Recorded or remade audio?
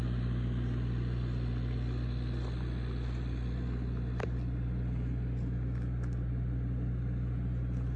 recorded